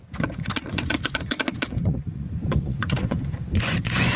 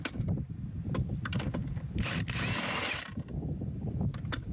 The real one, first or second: second